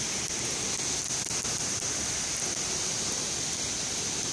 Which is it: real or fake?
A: real